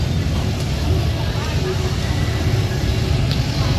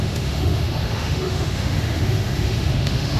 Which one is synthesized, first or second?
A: second